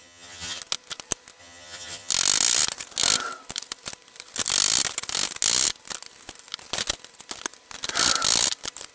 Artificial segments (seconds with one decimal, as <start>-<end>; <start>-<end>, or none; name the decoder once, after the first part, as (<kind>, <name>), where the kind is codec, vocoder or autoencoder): 0.0-0.6 (vocoder, HiFi-GAN); 1.4-2.1